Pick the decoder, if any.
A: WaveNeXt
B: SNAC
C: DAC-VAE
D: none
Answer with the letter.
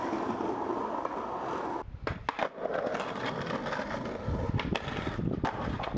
D